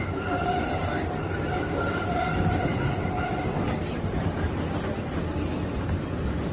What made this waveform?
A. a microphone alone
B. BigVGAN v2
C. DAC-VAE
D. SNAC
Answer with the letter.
A